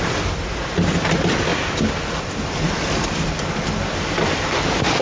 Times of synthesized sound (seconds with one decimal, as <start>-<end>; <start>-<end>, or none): none